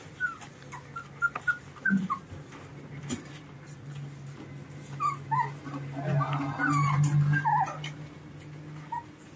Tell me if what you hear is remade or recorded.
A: recorded